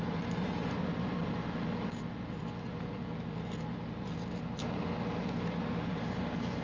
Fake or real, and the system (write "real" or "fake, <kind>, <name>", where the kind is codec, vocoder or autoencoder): real